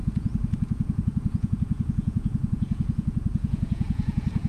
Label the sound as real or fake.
fake